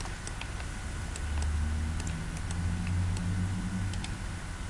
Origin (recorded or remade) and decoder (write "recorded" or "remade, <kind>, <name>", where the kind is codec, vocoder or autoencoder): recorded